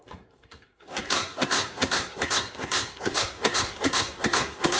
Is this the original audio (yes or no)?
no